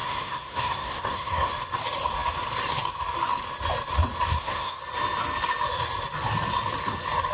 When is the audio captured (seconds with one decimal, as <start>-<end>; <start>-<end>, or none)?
1.5-4.3; 4.8-7.3